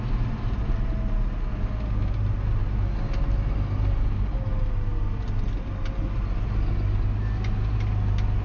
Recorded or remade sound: recorded